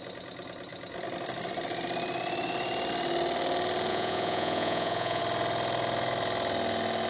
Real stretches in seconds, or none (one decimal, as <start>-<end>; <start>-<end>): 0.0-3.9; 5.2-7.1